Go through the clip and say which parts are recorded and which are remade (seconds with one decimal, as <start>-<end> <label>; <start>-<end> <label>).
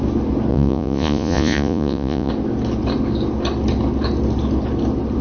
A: 0.0-0.5 recorded; 0.5-2.3 remade; 2.3-5.2 recorded